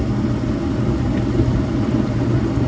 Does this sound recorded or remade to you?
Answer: recorded